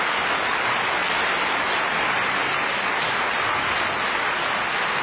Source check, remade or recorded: recorded